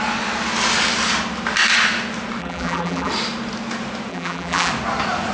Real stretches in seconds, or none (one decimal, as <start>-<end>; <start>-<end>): 0.0-2.4; 3.1-4.1; 4.7-5.3